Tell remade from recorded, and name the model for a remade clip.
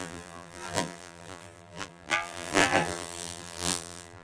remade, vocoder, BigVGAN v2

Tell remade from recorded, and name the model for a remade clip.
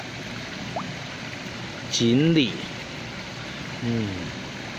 recorded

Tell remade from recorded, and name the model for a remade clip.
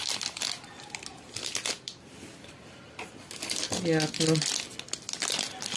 recorded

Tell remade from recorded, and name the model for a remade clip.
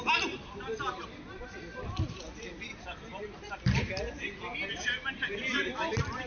recorded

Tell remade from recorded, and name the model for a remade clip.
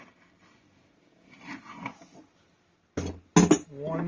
recorded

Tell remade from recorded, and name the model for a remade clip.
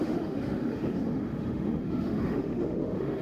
remade, autoencoder, DAC-VAE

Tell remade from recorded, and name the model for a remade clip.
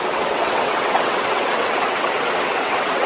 remade, vocoder, WaveNeXt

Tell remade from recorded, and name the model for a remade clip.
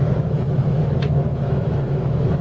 remade, autoencoder, DAC-VAE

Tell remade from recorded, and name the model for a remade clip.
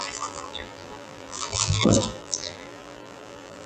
remade, vocoder, BigVGAN v2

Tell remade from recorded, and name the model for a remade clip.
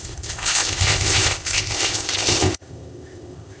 remade, codec, ZipCodec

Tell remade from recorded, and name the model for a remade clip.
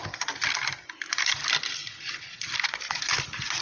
recorded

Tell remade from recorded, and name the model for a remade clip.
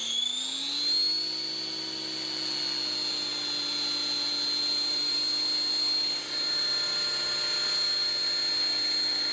recorded